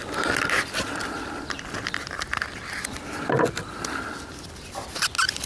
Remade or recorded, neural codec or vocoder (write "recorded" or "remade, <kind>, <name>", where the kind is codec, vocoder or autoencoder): recorded